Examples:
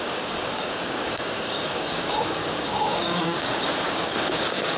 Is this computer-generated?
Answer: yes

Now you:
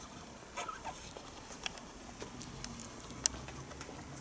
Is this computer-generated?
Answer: no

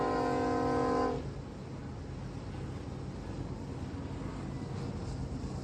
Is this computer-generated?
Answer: no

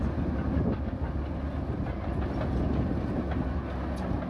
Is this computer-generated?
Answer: no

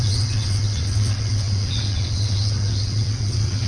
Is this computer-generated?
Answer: yes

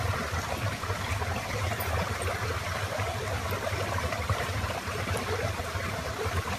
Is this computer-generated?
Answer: yes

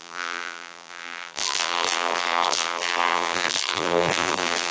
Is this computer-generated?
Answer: yes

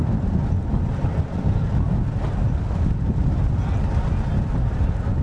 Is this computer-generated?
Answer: no